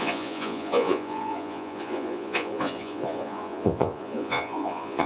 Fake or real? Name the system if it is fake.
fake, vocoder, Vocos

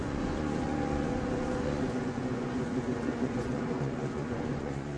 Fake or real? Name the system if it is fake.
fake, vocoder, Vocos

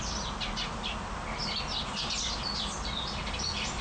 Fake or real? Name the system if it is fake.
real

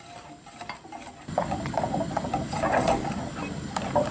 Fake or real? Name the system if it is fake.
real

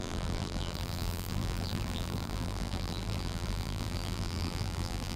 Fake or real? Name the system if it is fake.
fake, vocoder, BigVGAN v2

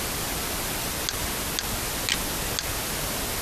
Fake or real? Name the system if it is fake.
real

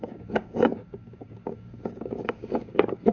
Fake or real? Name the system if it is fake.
fake, codec, DAC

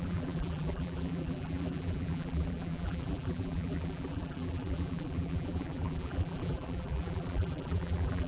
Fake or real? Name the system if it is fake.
fake, vocoder, BigVGAN v2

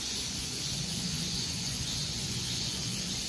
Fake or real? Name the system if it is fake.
fake, vocoder, Vocos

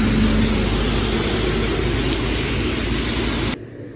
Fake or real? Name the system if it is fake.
real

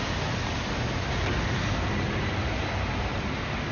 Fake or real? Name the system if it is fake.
real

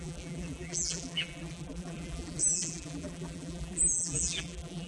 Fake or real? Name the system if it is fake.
fake, vocoder, BigVGAN v2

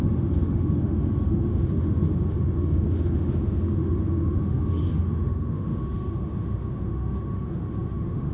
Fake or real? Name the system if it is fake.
fake, autoencoder, DAC-VAE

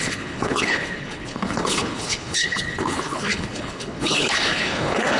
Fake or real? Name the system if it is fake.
fake, codec, HILCodec